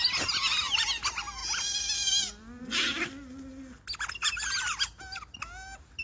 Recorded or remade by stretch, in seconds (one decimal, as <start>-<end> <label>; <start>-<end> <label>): 0.0-6.0 recorded